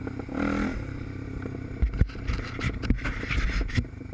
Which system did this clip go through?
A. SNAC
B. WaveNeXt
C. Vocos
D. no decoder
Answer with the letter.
D